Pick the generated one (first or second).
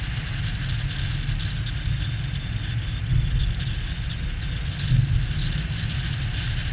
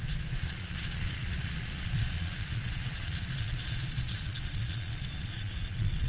second